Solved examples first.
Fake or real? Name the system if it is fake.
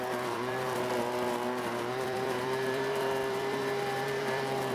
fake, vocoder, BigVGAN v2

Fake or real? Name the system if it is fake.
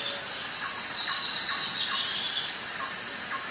real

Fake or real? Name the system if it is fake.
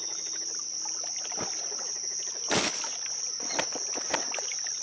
real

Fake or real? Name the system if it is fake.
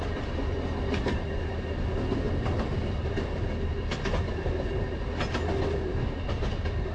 real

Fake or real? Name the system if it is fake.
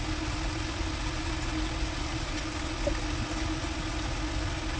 real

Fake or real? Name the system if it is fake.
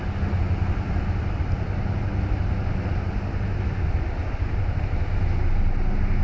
real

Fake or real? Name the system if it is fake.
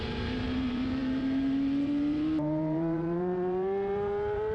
fake, vocoder, BigVGAN v2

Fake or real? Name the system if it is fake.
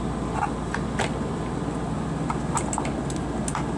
real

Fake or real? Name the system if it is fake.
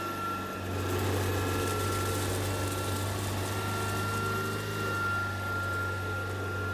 real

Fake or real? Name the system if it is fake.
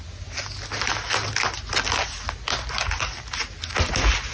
real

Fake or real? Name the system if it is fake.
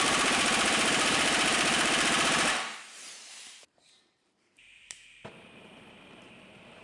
fake, vocoder, BigVGAN v2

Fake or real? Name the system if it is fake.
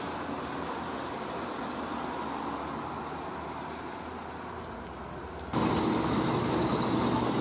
real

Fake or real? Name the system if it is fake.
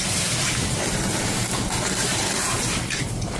fake, vocoder, BigVGAN v2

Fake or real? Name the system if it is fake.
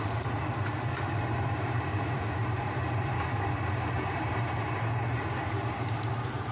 fake, vocoder, BigVGAN v2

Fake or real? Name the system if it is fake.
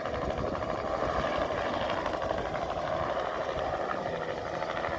real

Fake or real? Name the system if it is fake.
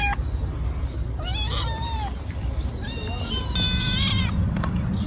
real